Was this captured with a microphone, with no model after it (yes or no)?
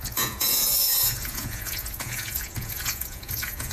no